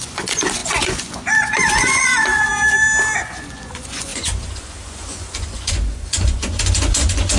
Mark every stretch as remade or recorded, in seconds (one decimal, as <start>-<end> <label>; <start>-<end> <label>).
0.0-2.5 remade; 2.5-3.2 recorded; 3.2-7.4 remade